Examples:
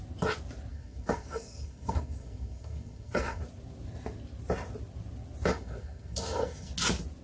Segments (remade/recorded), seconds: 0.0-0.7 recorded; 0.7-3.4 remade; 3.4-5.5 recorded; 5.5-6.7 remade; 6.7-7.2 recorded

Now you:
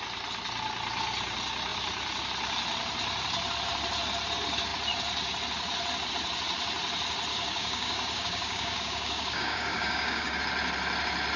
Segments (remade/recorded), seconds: 0.0-7.3 recorded; 7.3-10.4 remade; 10.4-11.4 recorded

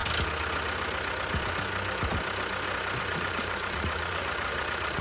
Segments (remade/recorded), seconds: 0.0-3.0 recorded; 3.0-5.0 remade

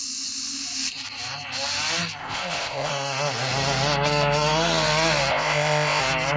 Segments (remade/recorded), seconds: 0.0-2.2 recorded; 2.2-2.9 remade; 2.9-5.3 recorded; 5.3-6.0 remade; 6.0-6.4 recorded

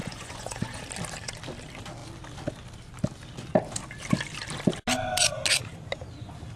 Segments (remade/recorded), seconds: 0.0-0.8 remade; 0.8-6.6 recorded